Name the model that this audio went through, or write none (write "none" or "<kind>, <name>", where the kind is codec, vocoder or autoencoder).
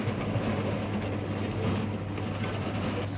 none